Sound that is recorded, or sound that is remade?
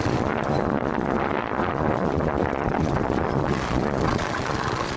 remade